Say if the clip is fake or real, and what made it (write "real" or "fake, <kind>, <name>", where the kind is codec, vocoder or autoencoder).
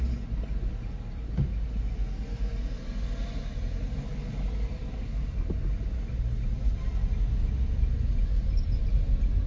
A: real